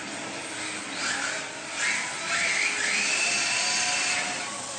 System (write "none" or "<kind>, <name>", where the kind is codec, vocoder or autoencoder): none